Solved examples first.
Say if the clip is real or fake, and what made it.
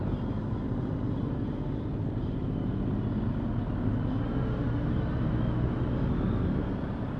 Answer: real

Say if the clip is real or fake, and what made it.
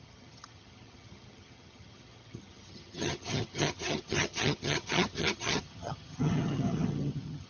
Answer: fake, vocoder, HiFi-GAN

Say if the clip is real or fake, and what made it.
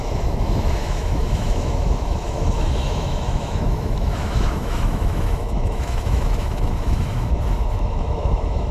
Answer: fake, autoencoder, DAC-VAE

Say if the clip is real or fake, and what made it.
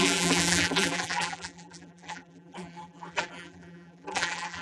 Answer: fake, vocoder, BigVGAN v2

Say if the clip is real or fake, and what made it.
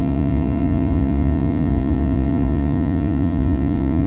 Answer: fake, vocoder, Vocos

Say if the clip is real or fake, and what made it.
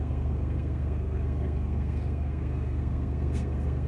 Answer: fake, codec, SNAC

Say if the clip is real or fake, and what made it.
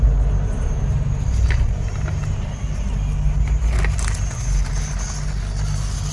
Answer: real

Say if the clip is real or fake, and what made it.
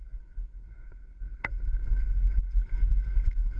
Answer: fake, codec, SNAC